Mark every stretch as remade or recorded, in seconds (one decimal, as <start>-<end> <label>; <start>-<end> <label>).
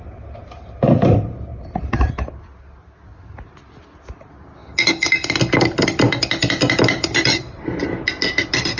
0.0-1.5 recorded; 1.5-2.3 remade; 2.3-8.8 recorded